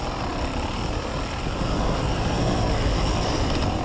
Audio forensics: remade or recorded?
recorded